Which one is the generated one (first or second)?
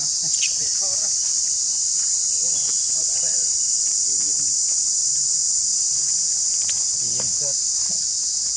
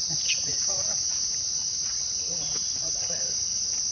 second